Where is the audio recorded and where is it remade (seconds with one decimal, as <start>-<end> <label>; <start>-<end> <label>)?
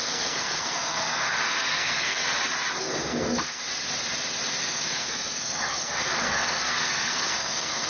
0.0-2.2 remade; 2.2-2.8 recorded; 2.8-3.6 remade; 3.6-4.6 recorded; 4.6-7.9 remade